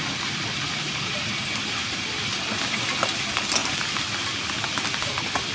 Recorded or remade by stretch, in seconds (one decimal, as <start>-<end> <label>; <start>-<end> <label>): 0.0-5.5 recorded